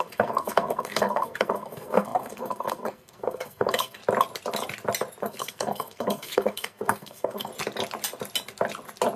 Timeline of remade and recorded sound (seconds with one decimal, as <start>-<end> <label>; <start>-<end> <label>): 0.0-4.0 remade; 4.0-5.2 recorded; 5.2-7.5 remade; 7.5-9.2 recorded